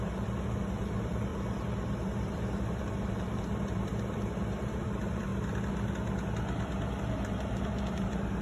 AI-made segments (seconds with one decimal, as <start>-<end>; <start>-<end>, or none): 0.0-5.3; 7.1-8.4